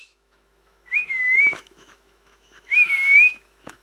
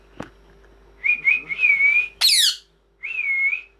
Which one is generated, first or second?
first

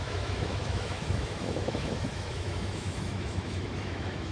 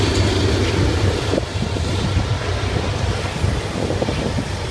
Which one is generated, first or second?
first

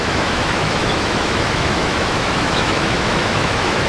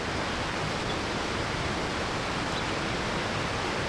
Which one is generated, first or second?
first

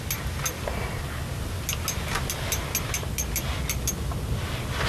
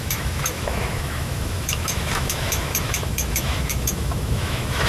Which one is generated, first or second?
second